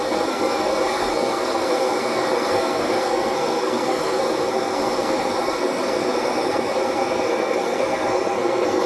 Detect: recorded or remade remade